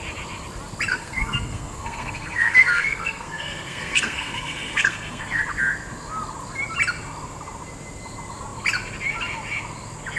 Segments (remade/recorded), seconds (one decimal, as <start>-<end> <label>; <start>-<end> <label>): 0.0-0.9 recorded; 0.9-5.4 remade; 5.4-10.2 recorded